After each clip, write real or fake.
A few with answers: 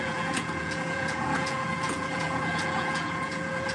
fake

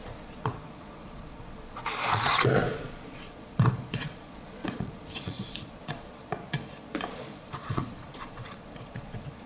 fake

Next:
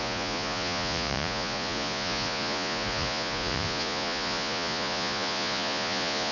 fake